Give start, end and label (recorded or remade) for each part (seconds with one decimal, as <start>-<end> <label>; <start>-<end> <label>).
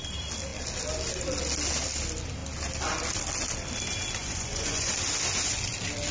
0.0-4.2 recorded; 4.2-4.9 remade; 4.9-6.1 recorded